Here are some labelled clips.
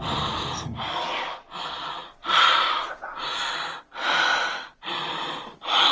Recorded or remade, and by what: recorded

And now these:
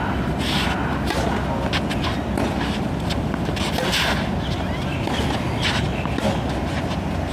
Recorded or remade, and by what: recorded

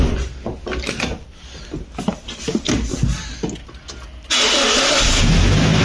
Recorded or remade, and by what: recorded